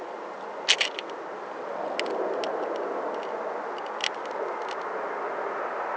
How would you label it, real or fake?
real